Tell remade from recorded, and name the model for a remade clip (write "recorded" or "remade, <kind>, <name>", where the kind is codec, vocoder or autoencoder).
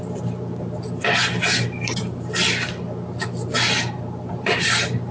remade, vocoder, BigVGAN v2